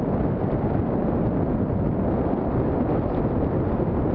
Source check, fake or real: real